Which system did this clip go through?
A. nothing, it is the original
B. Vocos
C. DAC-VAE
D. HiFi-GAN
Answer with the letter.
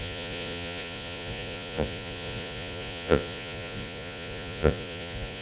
B